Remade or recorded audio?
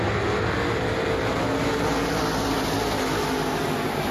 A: recorded